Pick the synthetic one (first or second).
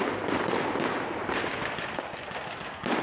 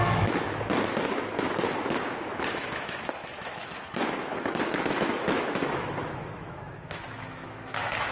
second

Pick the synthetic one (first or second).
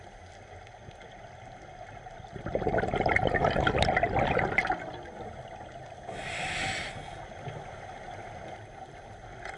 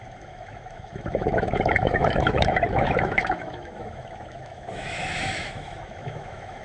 second